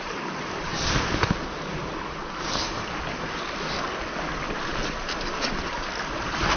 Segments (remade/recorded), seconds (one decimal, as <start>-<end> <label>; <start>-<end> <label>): 0.0-6.6 recorded

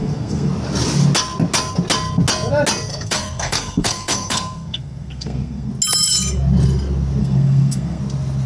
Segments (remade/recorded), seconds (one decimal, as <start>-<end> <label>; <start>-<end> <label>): 0.0-0.5 remade; 0.5-2.9 recorded; 2.9-5.7 remade; 5.7-7.2 recorded; 7.2-8.0 remade; 8.0-8.5 recorded

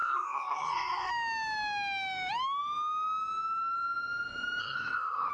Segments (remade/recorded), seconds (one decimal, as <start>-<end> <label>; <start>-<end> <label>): 0.0-1.1 remade; 1.1-4.6 recorded; 4.6-5.3 remade

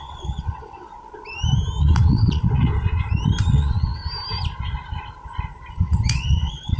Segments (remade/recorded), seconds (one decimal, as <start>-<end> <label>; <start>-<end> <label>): 0.0-0.9 remade; 0.9-1.8 recorded; 1.8-2.7 remade; 2.7-3.5 recorded; 3.5-4.0 remade; 4.0-5.7 recorded; 5.7-6.8 remade

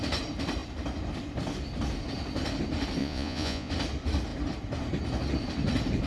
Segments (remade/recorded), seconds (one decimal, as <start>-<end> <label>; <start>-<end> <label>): 0.0-3.0 recorded; 3.0-3.7 remade; 3.7-6.1 recorded